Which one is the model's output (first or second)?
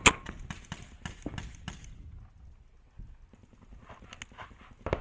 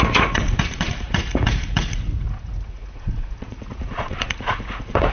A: second